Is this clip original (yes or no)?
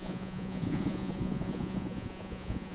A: no